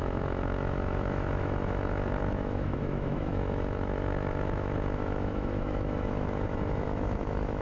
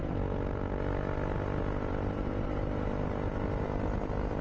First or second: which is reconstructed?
first